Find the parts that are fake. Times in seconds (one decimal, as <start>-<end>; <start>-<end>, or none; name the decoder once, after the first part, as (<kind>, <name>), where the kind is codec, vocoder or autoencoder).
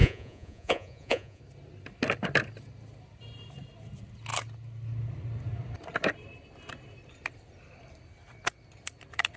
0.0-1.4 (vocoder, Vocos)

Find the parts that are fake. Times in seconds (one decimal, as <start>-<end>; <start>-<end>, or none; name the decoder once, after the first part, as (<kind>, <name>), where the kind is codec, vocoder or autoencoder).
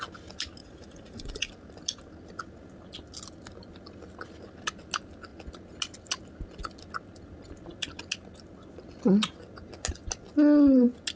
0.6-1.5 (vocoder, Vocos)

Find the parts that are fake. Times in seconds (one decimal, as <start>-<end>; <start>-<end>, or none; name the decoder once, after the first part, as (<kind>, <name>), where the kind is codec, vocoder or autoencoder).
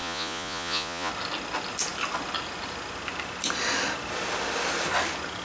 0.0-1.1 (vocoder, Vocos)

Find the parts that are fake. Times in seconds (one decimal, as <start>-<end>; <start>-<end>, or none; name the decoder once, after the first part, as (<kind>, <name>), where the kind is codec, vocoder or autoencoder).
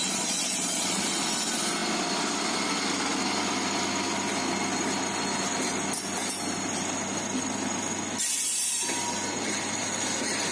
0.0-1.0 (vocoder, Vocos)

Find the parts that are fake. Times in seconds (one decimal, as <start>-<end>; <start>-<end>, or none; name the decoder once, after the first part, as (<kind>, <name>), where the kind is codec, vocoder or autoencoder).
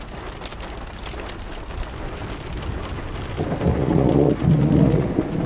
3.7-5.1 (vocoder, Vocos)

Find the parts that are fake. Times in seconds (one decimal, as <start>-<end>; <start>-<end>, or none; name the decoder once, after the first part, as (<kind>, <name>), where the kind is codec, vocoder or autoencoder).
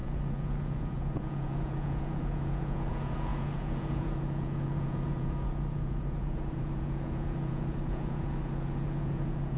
0.0-9.6 (vocoder, Vocos)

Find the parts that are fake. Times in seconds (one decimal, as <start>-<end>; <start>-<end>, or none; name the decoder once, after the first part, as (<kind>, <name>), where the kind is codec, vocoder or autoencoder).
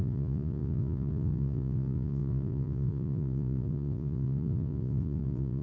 0.0-5.6 (vocoder, Vocos)